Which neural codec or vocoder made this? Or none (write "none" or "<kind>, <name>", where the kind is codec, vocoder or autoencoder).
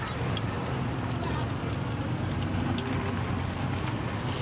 none